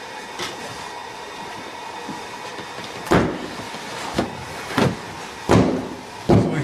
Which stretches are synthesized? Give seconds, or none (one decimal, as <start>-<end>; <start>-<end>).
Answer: 1.0-1.6